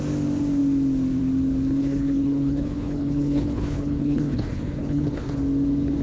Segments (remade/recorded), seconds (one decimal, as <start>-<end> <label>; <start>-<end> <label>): 0.0-1.8 recorded; 1.8-5.4 remade; 5.4-6.0 recorded